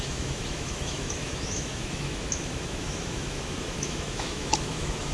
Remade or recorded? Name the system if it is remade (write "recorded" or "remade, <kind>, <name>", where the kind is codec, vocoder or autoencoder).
remade, autoencoder, DAC-VAE